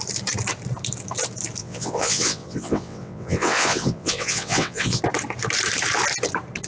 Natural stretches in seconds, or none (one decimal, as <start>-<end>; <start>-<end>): 0.0-1.6; 5.0-6.7